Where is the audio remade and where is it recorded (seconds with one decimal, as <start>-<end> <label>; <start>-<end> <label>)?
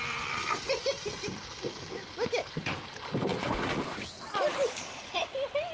0.0-3.3 recorded; 3.3-4.2 remade; 4.2-5.7 recorded